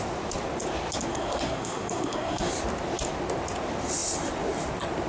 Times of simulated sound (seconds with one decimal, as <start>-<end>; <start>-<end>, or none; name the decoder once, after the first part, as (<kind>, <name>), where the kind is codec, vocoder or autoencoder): 1.1-2.5 (codec, SNAC)